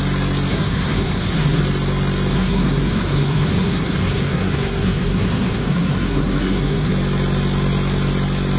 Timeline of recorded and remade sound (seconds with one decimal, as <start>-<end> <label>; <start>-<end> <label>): 0.0-0.5 recorded; 0.5-1.6 remade; 1.6-2.3 recorded; 2.3-6.9 remade; 6.9-8.6 recorded